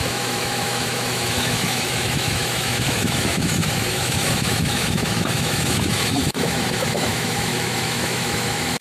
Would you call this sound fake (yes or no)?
yes